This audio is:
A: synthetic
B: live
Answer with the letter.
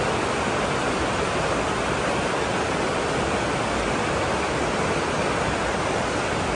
B